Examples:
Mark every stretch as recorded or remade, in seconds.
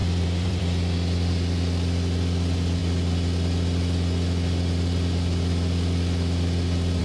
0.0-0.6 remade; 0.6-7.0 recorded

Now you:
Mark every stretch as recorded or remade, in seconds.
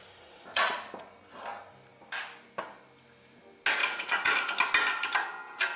0.0-0.7 remade; 0.7-3.8 recorded; 3.8-4.4 remade; 4.4-5.8 recorded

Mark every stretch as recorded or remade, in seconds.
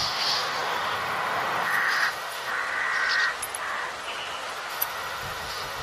0.0-2.5 remade; 2.5-4.7 recorded; 4.7-5.8 remade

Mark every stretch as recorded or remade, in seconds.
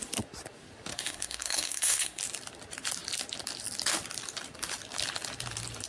0.0-0.9 recorded; 0.9-2.2 remade; 2.2-5.9 recorded